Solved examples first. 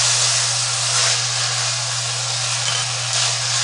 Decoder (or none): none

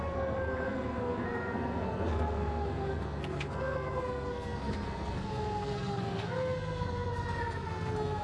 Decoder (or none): codec, SNAC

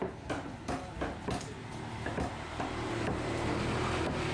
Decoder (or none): none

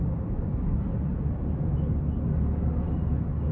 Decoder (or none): none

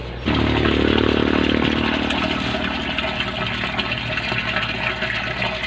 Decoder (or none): none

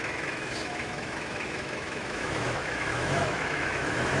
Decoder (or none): autoencoder, DAC-VAE